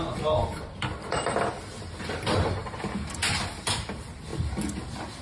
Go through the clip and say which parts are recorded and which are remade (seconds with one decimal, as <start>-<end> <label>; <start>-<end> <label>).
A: 0.0-5.2 recorded